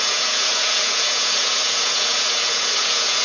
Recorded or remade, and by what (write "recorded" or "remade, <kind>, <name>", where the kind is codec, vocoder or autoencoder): remade, vocoder, Vocos